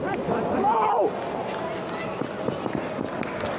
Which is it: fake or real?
real